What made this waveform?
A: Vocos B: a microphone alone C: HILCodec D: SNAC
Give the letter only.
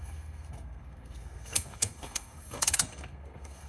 D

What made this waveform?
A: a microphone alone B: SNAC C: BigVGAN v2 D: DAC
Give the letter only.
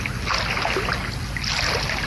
A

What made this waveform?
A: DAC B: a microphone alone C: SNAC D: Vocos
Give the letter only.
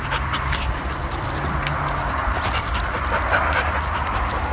B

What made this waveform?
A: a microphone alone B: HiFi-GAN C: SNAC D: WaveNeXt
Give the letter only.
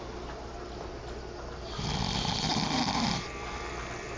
A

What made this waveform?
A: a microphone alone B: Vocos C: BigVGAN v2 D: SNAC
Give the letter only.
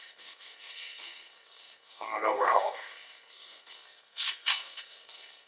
D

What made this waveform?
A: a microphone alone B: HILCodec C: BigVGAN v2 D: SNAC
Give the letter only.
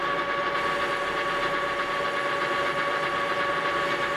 A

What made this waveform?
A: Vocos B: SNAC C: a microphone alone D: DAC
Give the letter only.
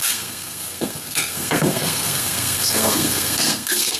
B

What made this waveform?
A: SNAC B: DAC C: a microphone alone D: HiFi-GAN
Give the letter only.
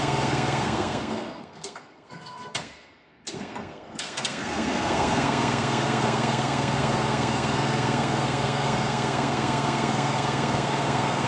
A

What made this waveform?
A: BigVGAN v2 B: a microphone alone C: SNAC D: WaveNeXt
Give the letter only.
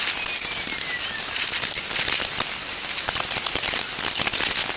B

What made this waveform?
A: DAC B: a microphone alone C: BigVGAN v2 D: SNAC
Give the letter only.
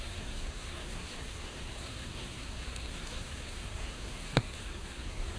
D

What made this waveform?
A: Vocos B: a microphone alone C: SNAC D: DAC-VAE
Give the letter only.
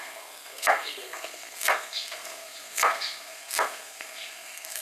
C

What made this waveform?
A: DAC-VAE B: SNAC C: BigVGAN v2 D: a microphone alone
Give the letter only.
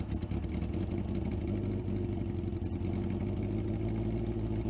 D